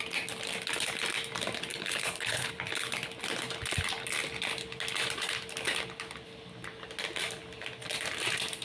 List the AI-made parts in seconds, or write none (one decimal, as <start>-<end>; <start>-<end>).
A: 1.7-2.5